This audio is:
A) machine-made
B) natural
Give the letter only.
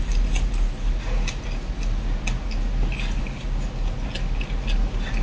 B